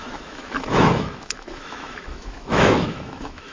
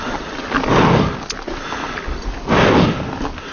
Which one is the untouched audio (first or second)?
second